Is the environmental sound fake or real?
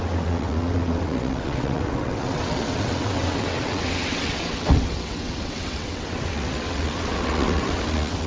fake